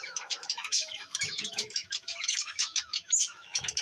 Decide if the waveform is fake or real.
fake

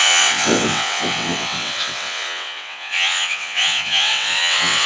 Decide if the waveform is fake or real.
fake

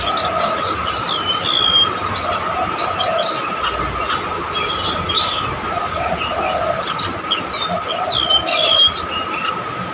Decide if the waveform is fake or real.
real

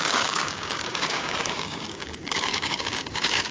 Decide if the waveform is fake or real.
fake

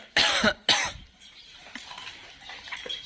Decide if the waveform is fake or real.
real